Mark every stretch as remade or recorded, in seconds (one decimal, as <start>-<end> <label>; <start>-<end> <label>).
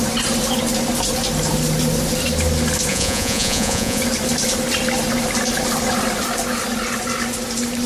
0.0-2.9 recorded; 2.9-4.0 remade; 4.0-7.9 recorded